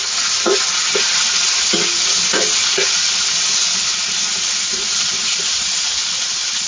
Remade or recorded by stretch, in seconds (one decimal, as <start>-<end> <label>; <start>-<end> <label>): 0.0-6.7 recorded